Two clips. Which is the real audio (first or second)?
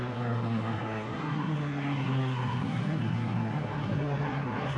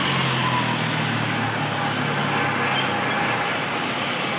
second